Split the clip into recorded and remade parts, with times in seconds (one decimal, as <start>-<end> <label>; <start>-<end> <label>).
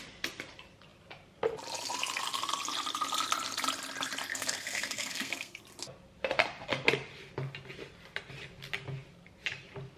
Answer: 0.0-4.3 recorded; 4.3-5.6 remade; 5.6-10.0 recorded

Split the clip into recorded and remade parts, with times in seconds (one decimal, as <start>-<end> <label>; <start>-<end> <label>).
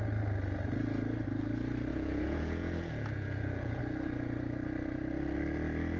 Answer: 0.0-1.9 recorded; 1.9-3.8 remade; 3.8-6.0 recorded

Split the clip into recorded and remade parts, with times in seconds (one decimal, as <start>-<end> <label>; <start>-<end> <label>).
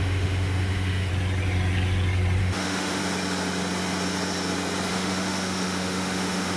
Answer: 0.0-1.1 remade; 1.1-2.4 recorded; 2.4-3.0 remade; 3.0-4.9 recorded; 4.9-6.6 remade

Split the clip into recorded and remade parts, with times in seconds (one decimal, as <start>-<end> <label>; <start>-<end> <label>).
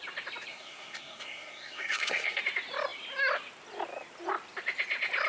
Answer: 0.0-0.5 recorded; 0.5-2.4 remade; 2.4-5.3 recorded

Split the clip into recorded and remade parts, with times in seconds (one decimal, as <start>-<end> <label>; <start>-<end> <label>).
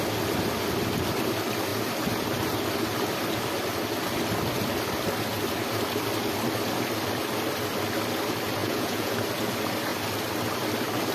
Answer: 0.0-8.6 recorded; 8.6-9.1 remade; 9.1-11.1 recorded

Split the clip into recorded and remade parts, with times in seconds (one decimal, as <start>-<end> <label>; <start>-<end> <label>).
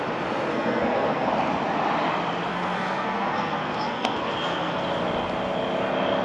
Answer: 0.0-0.5 recorded; 0.5-1.3 remade; 1.3-2.5 recorded; 2.5-4.8 remade; 4.8-6.2 recorded